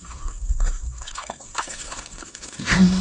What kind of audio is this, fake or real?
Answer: fake